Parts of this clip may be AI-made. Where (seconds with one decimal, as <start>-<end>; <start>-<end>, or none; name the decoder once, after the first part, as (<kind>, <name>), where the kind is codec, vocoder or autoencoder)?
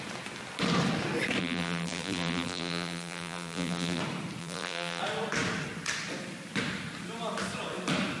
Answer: 1.4-4.0 (vocoder, BigVGAN v2); 4.4-5.0